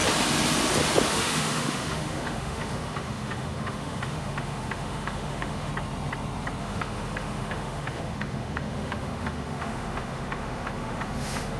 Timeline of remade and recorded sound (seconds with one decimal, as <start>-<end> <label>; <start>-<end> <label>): 0.0-1.1 recorded; 1.1-5.7 remade; 5.7-6.6 recorded; 6.6-11.6 remade